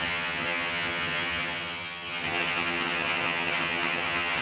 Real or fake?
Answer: fake